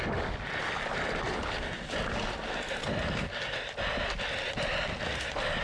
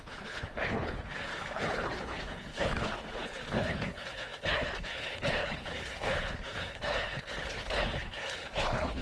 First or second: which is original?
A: first